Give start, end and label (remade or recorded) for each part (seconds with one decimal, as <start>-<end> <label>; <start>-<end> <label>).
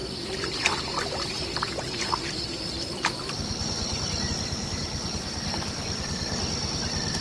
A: 0.0-7.2 recorded